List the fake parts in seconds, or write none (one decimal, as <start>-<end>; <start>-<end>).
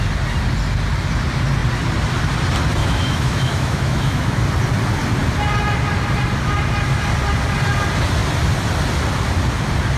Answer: 2.8-4.4